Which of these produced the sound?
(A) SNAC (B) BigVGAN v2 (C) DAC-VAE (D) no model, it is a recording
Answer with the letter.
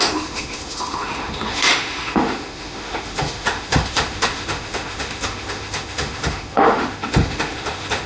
C